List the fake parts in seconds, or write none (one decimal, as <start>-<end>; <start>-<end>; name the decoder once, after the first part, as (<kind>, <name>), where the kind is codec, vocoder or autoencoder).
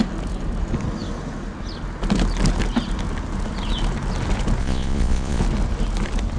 4.6-5.4 (vocoder, Vocos)